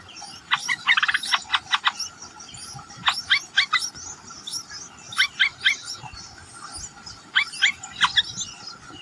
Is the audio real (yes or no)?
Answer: yes